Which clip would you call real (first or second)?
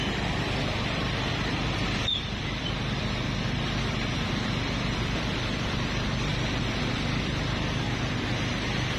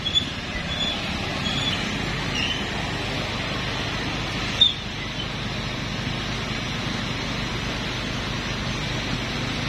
second